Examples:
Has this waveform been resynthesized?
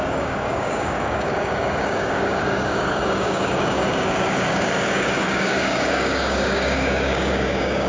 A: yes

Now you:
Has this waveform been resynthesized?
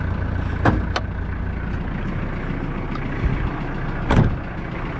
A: no